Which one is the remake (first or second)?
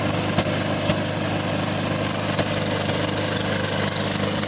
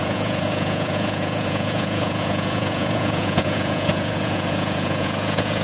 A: second